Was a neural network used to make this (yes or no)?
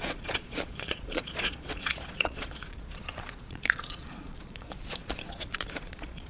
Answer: yes